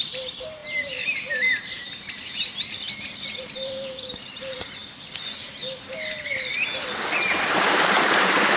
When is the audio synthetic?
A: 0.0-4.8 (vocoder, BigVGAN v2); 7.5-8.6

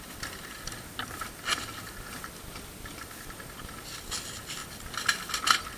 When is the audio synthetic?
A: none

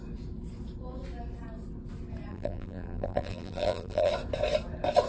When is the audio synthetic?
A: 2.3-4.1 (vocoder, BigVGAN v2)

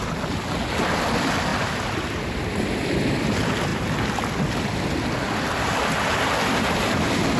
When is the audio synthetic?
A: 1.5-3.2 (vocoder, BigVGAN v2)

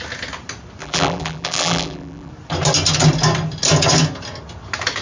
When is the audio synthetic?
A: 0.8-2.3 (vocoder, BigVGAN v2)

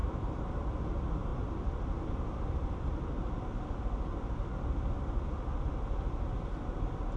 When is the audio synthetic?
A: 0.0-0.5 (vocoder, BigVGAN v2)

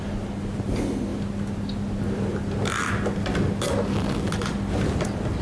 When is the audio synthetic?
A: none